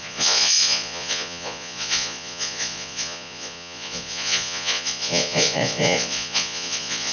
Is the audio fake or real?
fake